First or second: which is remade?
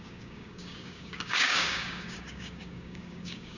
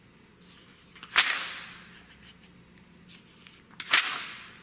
first